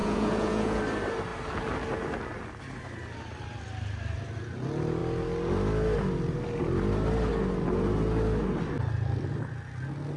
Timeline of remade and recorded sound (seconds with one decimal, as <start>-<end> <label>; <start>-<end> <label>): 0.0-0.8 remade; 0.8-10.2 recorded